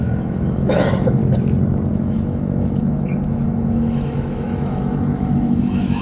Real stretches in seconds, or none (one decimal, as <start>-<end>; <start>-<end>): 1.2-1.9